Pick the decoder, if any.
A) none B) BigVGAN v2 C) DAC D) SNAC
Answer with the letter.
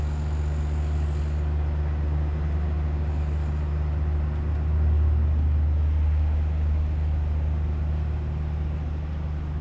A